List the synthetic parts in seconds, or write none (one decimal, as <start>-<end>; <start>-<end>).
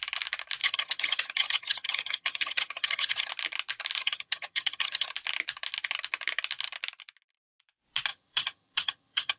0.6-3.3; 4.0-5.1; 8.1-9.4